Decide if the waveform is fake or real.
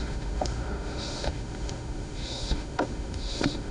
fake